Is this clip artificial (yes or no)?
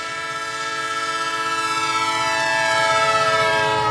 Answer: yes